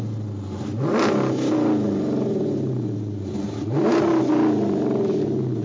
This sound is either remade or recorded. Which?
recorded